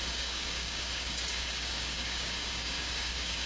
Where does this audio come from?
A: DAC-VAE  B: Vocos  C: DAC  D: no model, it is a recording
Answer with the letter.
C